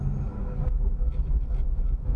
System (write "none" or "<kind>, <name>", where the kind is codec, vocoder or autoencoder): none